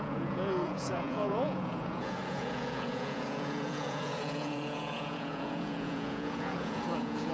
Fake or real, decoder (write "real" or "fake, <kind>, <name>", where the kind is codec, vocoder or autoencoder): fake, vocoder, Vocos